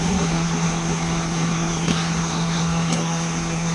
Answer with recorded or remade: remade